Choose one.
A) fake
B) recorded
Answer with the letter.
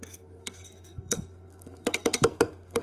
A